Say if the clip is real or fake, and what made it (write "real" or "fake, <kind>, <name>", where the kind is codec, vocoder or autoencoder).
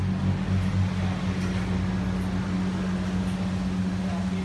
real